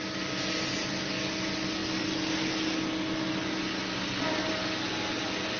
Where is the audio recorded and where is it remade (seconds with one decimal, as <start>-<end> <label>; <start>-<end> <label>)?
0.0-5.6 recorded